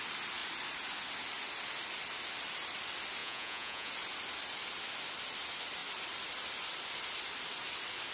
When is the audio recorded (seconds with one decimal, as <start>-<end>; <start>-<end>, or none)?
0.0-3.2; 3.9-8.1